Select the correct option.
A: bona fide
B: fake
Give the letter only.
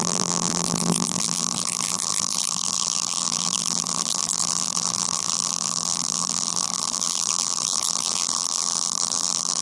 B